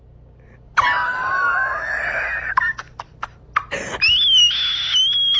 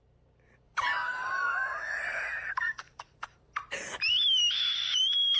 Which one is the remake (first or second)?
second